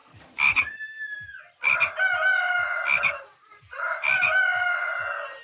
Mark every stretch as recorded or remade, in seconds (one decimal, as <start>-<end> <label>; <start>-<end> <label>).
0.0-5.4 recorded